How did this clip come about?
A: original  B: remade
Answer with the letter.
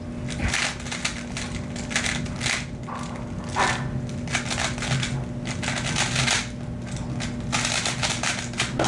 A